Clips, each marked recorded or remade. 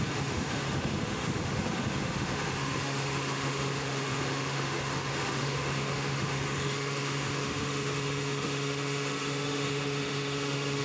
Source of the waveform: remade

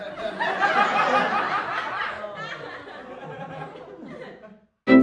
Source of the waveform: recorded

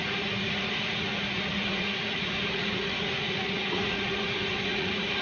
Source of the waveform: remade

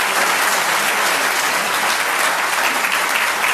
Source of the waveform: recorded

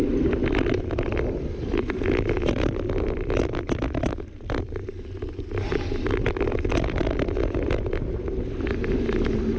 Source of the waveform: recorded